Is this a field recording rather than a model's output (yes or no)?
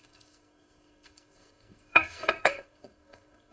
no